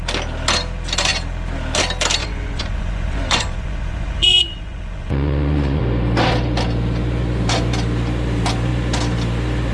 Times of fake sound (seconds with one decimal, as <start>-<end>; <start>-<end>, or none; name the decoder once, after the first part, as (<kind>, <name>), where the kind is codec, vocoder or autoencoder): 2.2-5.8 (vocoder, Vocos)